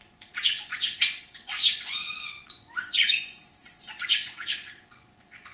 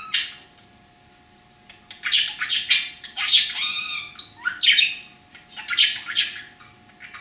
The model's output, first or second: first